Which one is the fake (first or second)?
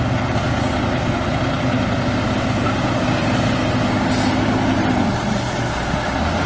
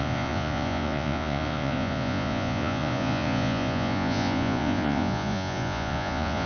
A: second